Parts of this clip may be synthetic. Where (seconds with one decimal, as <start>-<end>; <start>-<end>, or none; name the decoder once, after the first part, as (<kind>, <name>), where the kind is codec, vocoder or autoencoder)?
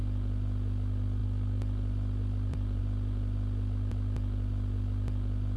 1.2-2.8 (vocoder, BigVGAN v2)